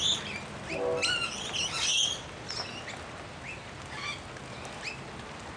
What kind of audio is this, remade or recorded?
recorded